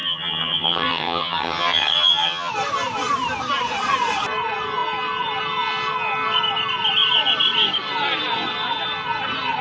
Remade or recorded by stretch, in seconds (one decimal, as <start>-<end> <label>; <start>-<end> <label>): 0.0-2.5 remade; 2.5-9.6 recorded